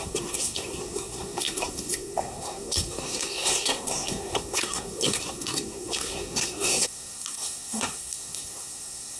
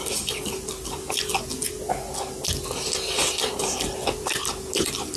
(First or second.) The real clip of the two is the second